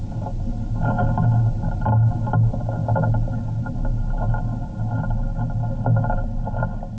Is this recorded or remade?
recorded